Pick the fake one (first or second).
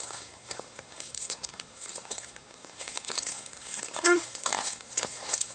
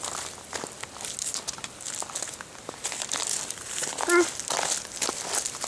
first